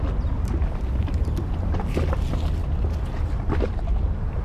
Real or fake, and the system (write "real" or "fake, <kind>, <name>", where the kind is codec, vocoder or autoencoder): real